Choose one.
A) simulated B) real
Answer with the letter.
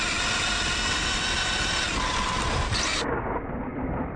B